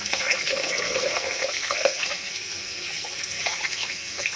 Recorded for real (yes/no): no